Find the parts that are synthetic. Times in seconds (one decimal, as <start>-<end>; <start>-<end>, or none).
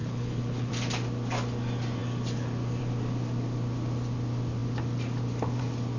0.0-0.7